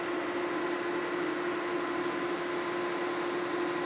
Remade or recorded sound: recorded